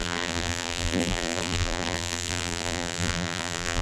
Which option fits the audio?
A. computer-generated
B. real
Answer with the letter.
A